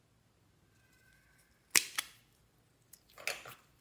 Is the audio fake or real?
real